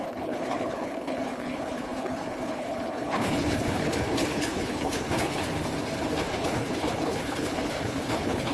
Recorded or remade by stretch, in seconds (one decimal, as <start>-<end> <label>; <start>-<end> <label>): 0.0-5.4 remade; 5.4-6.2 recorded; 6.2-8.5 remade